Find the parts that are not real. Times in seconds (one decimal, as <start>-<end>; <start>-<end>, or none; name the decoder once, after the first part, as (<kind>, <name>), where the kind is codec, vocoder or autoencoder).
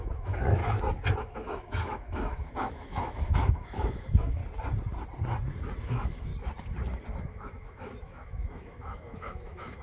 0.0-0.6 (autoencoder, DAC-VAE); 1.2-4.4; 5.8-6.3; 7.2-9.8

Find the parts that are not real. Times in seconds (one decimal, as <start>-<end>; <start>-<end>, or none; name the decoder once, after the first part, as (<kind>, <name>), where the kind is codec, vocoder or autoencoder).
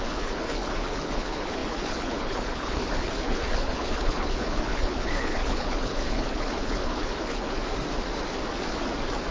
0.0-7.6 (codec, HILCodec)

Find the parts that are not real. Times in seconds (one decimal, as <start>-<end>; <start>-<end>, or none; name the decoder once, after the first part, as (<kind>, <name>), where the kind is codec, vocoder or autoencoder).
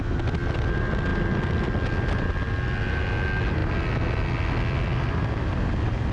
none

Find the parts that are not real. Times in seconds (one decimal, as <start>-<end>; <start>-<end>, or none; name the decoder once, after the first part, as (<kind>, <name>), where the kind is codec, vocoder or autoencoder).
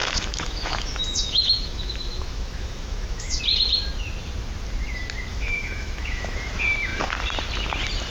0.0-3.4 (autoencoder, DAC-VAE); 5.3-6.5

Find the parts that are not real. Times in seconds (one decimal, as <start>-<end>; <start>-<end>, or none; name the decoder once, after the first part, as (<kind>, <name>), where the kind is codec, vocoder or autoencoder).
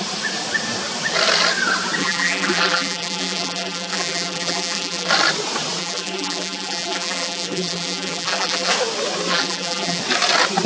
2.0-5.1 (vocoder, BigVGAN v2); 5.8-8.7; 9.3-10.0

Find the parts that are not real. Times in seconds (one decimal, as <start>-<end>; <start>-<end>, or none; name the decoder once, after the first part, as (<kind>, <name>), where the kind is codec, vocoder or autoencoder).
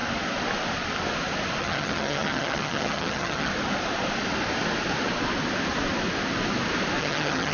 1.6-3.5 (vocoder, HiFi-GAN); 7.0-7.5